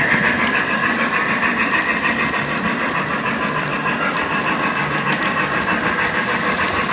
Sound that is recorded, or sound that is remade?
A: remade